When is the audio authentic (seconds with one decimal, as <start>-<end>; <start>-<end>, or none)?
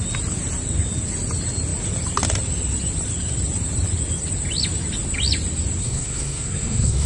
0.0-5.8